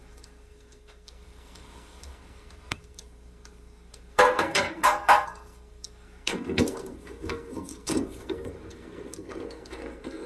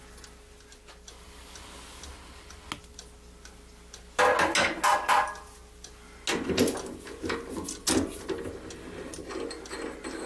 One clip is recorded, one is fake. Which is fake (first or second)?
first